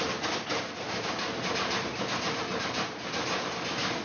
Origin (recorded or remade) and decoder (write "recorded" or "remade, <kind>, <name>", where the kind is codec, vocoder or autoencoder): recorded